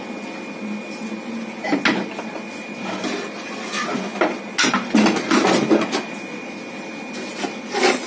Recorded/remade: recorded